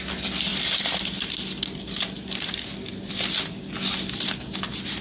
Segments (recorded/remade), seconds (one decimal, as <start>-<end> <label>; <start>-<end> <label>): 0.0-5.0 recorded